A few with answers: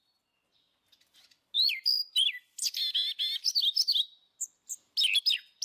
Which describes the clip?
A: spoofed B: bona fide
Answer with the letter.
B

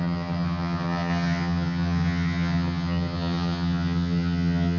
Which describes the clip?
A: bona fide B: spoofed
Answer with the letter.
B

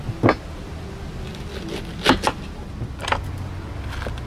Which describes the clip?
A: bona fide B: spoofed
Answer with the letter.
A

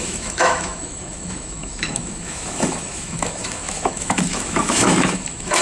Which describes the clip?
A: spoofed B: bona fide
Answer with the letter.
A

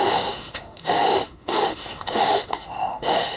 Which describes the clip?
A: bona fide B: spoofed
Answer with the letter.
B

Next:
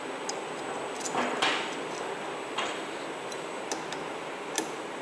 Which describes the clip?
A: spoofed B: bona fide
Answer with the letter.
B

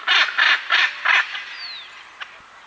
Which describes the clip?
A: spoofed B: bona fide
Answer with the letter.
B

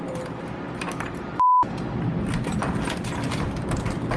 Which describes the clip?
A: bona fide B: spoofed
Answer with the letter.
B